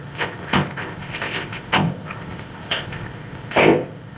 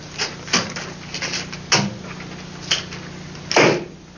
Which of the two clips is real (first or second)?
second